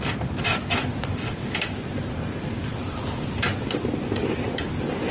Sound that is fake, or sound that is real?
real